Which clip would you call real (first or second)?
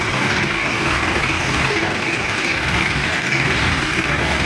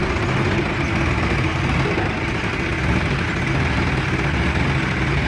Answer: second